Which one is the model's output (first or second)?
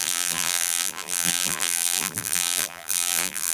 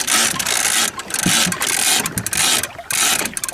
first